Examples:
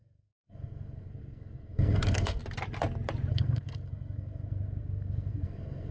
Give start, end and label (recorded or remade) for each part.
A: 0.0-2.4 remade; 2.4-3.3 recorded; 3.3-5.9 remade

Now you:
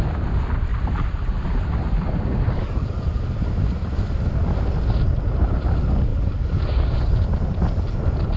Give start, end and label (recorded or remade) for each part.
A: 0.0-8.4 recorded

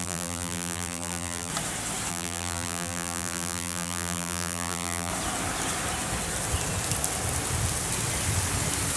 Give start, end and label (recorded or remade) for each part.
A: 0.0-1.5 remade; 1.5-2.1 recorded; 2.1-5.1 remade; 5.1-9.0 recorded

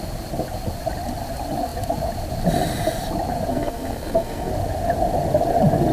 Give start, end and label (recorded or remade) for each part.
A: 0.0-3.5 recorded; 3.5-4.5 remade; 4.5-5.9 recorded

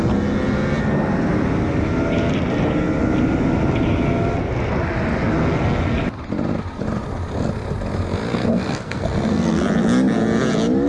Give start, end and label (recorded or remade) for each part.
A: 0.0-8.3 recorded; 8.3-9.6 remade; 9.6-10.9 recorded

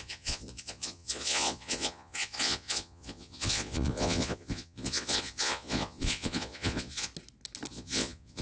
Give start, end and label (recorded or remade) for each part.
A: 0.0-7.1 remade; 7.1-7.7 recorded; 7.7-8.4 remade

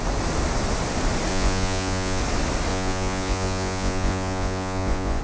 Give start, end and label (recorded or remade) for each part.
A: 0.0-1.3 recorded; 1.3-2.2 remade; 2.2-2.7 recorded; 2.7-5.2 remade